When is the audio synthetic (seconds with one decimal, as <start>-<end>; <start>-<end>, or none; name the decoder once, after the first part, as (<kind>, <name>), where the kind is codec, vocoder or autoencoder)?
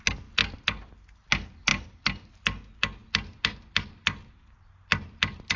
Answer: none